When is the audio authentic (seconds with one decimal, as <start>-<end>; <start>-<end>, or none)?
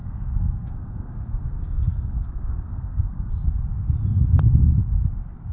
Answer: 3.3-5.5